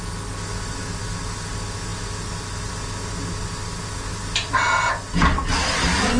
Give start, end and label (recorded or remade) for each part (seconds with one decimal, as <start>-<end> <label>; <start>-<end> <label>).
0.0-6.2 recorded

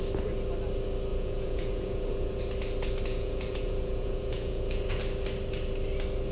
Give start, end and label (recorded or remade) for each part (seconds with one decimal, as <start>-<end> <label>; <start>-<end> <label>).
0.0-1.1 recorded; 1.1-2.4 remade; 2.4-3.1 recorded; 3.1-5.0 remade; 5.0-6.3 recorded

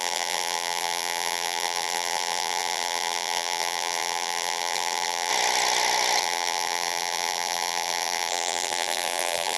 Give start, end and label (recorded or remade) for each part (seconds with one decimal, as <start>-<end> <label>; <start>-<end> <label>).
0.0-5.3 remade; 5.3-6.2 recorded; 6.2-9.6 remade

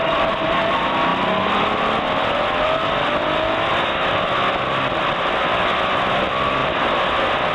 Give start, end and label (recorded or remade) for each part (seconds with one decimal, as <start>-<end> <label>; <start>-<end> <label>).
0.0-7.5 recorded

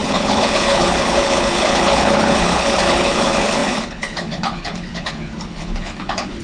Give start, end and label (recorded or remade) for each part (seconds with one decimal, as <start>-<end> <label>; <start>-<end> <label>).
0.0-6.4 remade

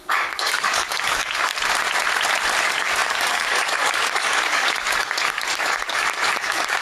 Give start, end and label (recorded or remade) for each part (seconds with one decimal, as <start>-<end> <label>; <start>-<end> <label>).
0.0-1.5 remade; 1.5-2.6 recorded; 2.6-6.8 remade